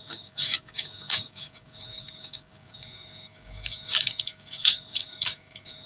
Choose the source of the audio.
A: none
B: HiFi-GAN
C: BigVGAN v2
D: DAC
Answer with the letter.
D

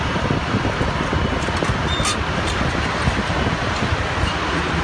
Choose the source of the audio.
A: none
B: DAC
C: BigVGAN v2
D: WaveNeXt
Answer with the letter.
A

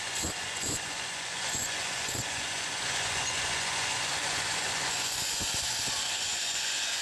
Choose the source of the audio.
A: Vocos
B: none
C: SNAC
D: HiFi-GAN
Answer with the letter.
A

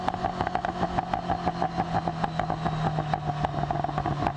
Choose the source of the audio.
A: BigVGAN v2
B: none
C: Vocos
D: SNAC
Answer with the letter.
B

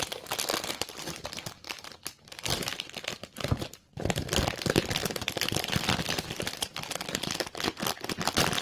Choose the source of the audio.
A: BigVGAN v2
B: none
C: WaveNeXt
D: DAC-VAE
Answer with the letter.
B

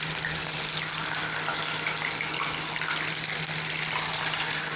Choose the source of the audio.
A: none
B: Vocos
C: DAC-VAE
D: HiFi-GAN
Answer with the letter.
A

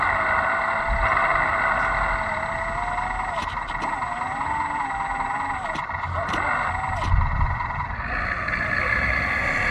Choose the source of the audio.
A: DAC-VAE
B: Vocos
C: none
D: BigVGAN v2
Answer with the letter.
C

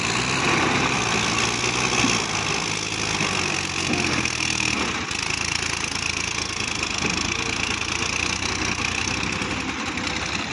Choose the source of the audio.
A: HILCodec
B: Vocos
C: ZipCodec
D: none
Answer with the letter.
D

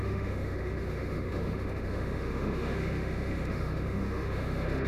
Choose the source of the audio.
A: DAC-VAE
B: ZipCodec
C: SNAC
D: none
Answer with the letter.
A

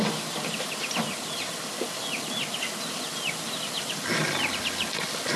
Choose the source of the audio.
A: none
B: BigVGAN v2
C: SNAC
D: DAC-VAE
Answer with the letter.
A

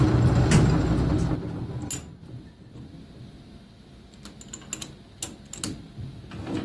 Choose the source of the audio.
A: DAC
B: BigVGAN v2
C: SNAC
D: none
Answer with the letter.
D